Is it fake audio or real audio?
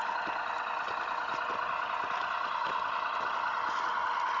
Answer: real